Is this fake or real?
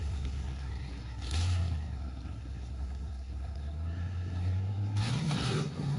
fake